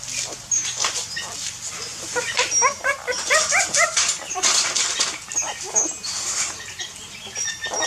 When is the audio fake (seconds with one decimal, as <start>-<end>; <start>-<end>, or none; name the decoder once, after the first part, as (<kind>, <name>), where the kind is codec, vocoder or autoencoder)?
1.9-5.1 (vocoder, BigVGAN v2); 5.5-7.9